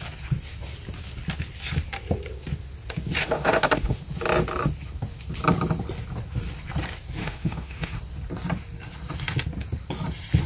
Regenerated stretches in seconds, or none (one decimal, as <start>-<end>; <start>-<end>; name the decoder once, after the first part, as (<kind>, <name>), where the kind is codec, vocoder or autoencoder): 3.2-4.0 (autoencoder, DAC-VAE); 7.2-8.0